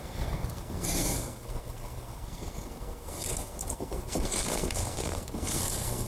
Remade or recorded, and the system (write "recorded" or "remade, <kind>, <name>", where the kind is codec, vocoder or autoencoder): remade, codec, SNAC